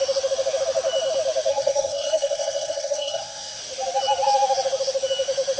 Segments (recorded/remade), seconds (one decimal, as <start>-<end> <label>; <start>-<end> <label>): 0.0-1.5 recorded; 1.5-3.6 remade; 3.6-5.6 recorded